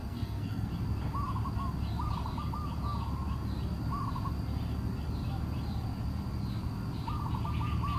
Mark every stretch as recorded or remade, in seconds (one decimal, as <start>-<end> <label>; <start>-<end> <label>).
0.0-0.7 remade; 0.7-8.0 recorded